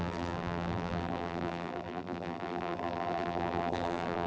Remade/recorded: remade